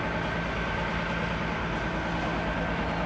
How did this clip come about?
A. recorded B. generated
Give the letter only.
A